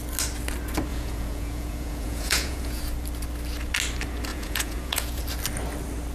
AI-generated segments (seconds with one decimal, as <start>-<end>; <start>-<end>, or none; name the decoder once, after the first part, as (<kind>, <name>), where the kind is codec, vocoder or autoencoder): 0.9-2.8 (vocoder, Vocos); 4.3-5.2